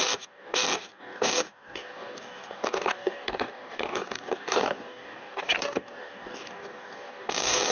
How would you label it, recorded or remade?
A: remade